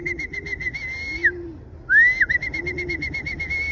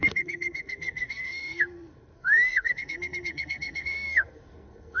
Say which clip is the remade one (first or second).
second